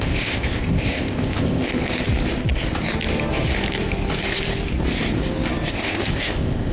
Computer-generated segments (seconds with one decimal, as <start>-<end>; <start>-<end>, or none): 0.0-1.7; 5.7-6.7